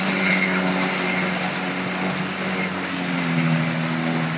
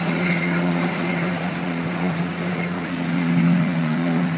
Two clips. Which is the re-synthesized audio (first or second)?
second